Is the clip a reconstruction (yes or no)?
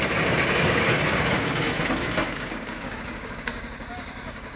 yes